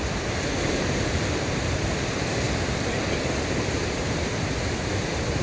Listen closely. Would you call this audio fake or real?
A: fake